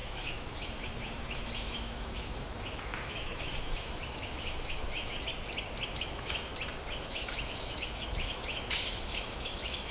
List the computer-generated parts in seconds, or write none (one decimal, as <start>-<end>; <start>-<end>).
0.0-5.3; 5.9-6.5; 7.0-9.9